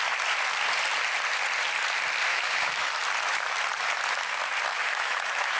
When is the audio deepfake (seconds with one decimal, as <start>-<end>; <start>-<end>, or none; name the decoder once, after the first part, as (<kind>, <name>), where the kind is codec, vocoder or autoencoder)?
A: 2.3-2.9 (autoencoder, DAC-VAE); 4.7-5.6